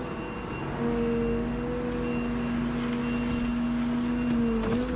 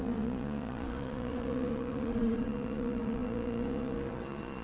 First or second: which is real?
first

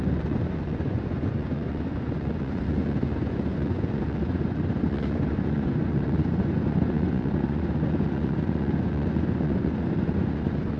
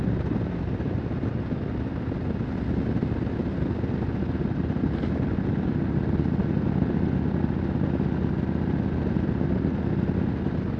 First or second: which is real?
second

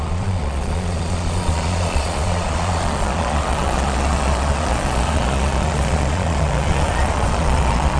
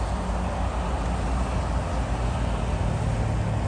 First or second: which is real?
second